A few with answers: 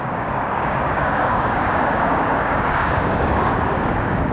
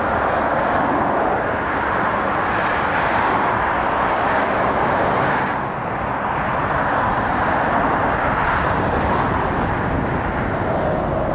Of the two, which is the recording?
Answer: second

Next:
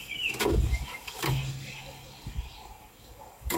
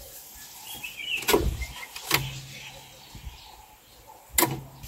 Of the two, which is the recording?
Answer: second